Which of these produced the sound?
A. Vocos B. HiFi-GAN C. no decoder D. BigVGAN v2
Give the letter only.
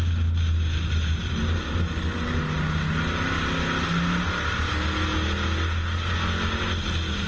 C